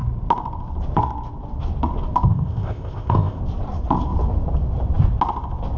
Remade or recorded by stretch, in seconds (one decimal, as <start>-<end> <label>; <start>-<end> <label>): 0.0-2.3 recorded; 2.3-3.4 remade; 3.4-5.8 recorded